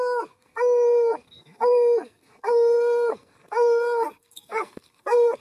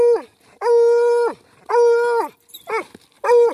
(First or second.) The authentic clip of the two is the second